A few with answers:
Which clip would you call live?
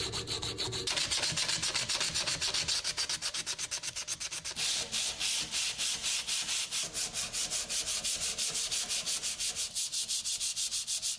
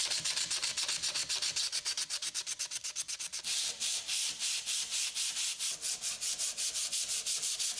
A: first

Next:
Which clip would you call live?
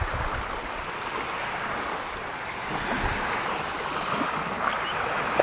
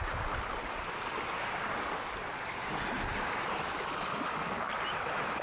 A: first